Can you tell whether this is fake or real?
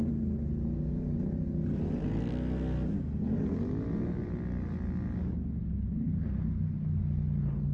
real